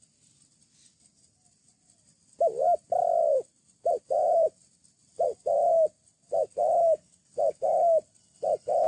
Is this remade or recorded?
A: recorded